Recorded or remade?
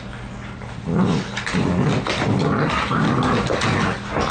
recorded